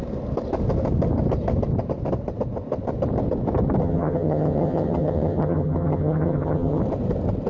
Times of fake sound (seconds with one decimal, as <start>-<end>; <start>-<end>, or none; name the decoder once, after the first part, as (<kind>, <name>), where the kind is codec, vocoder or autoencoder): 3.8-6.8 (vocoder, HiFi-GAN)